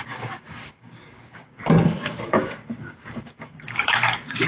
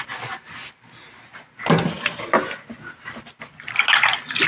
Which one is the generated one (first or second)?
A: first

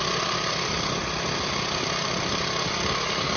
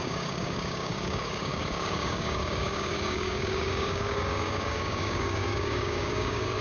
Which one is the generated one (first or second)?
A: second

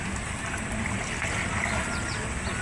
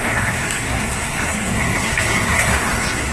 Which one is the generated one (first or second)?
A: second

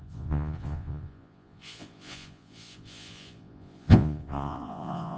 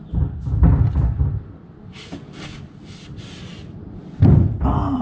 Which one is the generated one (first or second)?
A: first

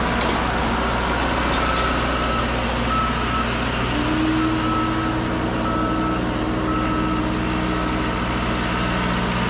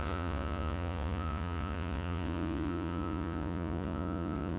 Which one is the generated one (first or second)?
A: second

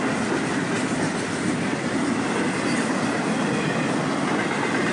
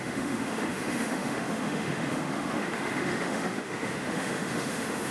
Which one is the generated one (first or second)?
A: second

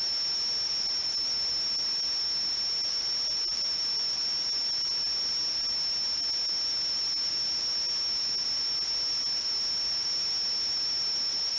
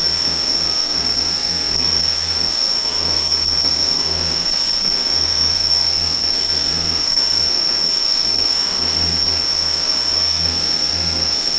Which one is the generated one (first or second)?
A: second